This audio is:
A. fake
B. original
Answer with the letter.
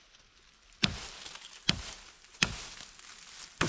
B